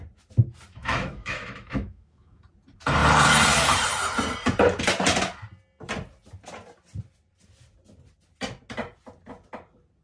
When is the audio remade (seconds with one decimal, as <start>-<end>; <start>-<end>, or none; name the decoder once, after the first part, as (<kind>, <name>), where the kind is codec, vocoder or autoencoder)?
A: 0.7-2.4 (autoencoder, DAC-VAE)